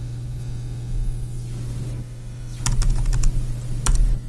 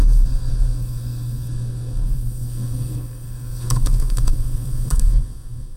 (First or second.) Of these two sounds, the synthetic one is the second